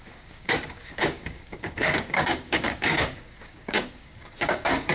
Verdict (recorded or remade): remade